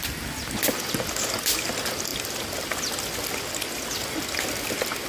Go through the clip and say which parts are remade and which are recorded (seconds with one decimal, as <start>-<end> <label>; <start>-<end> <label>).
0.0-5.1 recorded